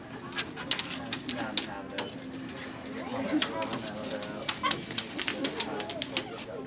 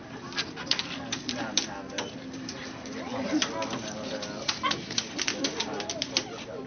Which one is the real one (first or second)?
first